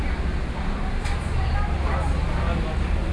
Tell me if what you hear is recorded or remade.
recorded